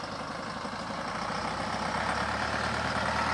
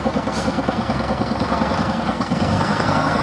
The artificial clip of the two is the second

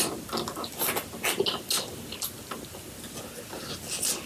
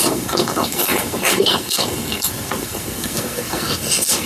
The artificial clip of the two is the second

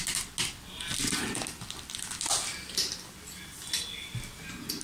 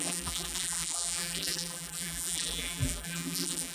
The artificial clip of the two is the second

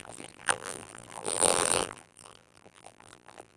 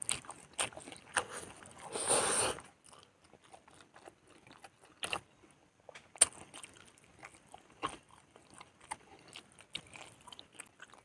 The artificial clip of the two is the first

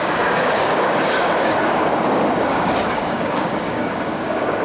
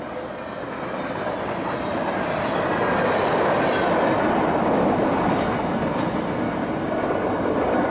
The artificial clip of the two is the first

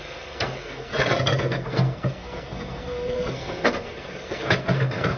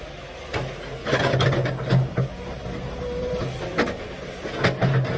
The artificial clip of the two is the first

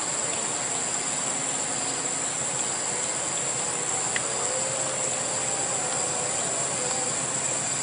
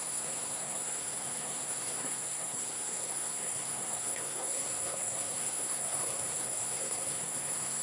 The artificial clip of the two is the second